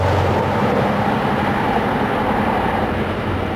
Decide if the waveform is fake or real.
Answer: real